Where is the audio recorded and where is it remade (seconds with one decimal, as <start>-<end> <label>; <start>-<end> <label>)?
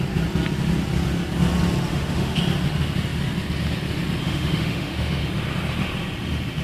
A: 0.0-1.9 recorded; 1.9-2.4 remade; 2.4-4.2 recorded; 4.2-5.2 remade; 5.2-6.6 recorded